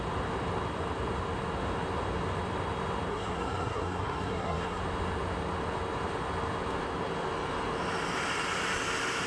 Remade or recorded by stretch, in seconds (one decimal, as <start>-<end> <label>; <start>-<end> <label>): 0.0-3.1 recorded; 3.1-4.8 remade; 4.8-9.3 recorded